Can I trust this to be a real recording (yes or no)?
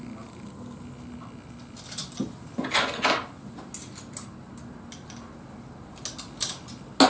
yes